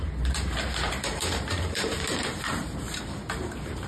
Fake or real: fake